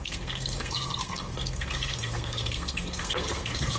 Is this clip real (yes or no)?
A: no